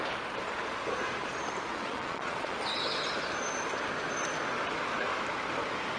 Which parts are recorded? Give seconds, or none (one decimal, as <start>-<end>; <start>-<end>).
0.0-1.7; 2.6-6.0